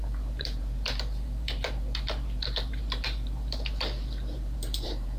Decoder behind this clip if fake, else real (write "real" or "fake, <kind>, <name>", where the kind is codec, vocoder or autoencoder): fake, vocoder, BigVGAN v2